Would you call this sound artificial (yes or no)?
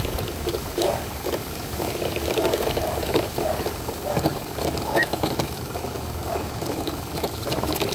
yes